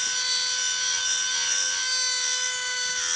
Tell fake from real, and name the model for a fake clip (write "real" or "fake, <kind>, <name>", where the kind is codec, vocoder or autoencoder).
real